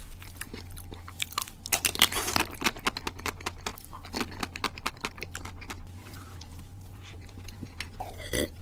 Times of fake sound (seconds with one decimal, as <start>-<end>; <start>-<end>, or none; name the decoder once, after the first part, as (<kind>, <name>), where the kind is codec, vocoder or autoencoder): 6.0-8.6 (vocoder, Vocos)